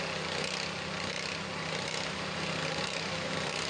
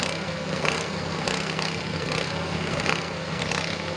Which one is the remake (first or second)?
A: second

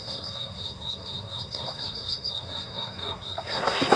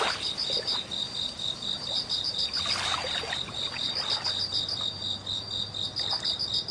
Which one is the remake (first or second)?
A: first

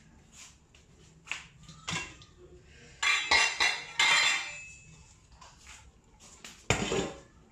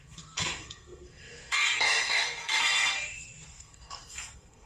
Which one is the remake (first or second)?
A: second